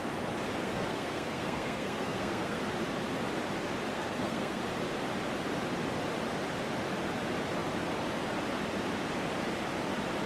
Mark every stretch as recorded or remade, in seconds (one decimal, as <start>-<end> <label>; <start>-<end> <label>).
0.0-0.6 recorded; 0.6-2.6 remade; 2.6-3.9 recorded; 3.9-4.6 remade; 4.6-10.3 recorded